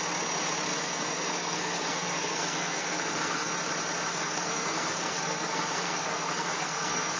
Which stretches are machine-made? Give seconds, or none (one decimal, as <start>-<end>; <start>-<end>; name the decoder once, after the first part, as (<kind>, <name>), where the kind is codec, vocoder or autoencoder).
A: 0.7-3.5 (codec, SNAC); 4.1-7.2